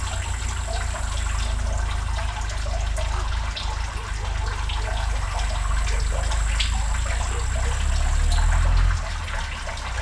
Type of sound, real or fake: real